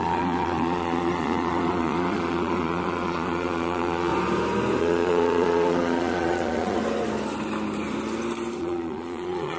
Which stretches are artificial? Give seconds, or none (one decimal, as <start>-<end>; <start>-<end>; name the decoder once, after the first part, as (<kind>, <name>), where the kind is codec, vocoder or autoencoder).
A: 0.0-4.1 (vocoder, Vocos); 4.8-6.8; 8.6-9.6